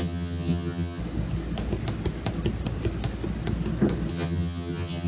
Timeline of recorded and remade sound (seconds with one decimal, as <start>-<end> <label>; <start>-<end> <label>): 0.0-1.0 remade; 1.0-4.1 recorded; 4.1-5.1 remade